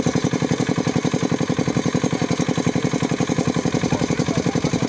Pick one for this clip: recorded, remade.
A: recorded